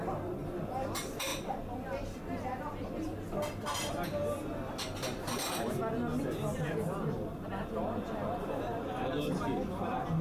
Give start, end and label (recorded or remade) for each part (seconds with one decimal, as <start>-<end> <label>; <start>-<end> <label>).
0.0-10.2 recorded